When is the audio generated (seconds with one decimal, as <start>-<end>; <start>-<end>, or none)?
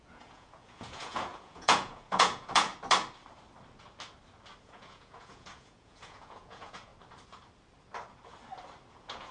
0.0-2.7; 4.6-6.9; 8.9-9.3